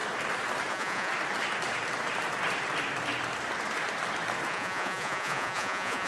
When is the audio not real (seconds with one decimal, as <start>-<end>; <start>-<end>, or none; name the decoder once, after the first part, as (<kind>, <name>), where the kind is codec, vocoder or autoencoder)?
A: 0.7-1.1 (vocoder, Vocos); 4.5-6.1